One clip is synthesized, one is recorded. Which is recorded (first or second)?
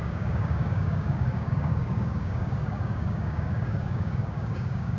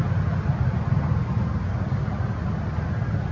second